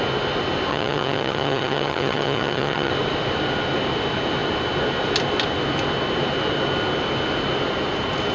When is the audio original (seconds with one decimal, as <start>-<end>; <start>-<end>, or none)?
0.0-0.7; 2.9-8.3